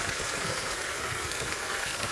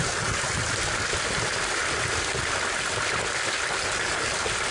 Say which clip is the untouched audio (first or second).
second